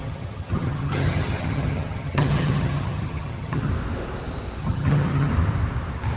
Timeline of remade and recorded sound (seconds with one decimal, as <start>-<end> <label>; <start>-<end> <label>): 0.0-3.7 remade; 3.7-4.6 recorded; 4.6-5.3 remade; 5.3-6.2 recorded